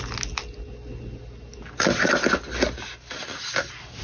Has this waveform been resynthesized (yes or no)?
no